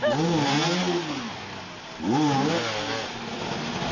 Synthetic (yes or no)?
no